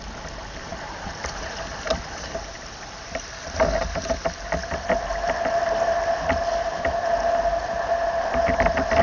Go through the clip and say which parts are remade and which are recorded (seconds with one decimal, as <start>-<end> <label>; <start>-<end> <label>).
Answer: 0.0-9.0 recorded